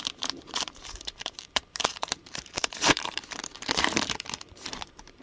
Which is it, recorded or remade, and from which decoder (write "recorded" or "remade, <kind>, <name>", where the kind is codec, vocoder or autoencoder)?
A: remade, vocoder, BigVGAN v2